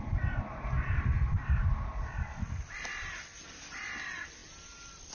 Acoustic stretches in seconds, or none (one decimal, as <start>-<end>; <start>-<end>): 0.0-5.1